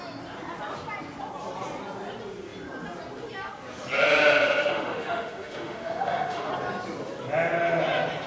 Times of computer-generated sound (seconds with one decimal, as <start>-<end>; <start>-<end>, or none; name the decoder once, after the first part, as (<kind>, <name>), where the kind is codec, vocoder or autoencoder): 4.6-6.5 (autoencoder, DAC-VAE)